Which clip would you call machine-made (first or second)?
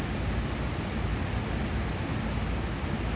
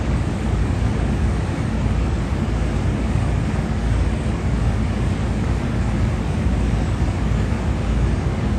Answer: second